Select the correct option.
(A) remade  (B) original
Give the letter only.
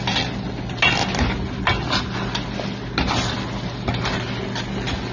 B